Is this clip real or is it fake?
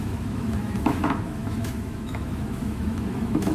fake